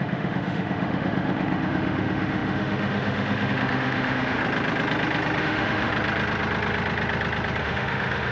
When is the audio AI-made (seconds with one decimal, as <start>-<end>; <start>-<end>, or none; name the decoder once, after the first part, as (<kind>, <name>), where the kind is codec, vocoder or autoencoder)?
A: 0.0-4.4 (autoencoder, DAC-VAE); 5.4-5.9; 7.6-8.3